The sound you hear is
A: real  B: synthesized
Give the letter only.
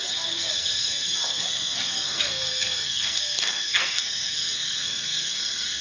B